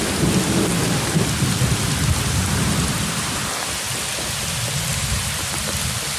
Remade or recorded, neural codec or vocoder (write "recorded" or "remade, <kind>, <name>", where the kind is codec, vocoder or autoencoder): recorded